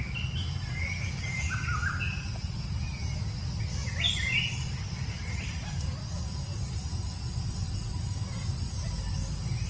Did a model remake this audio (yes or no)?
no